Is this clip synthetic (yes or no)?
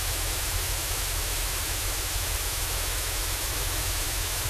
yes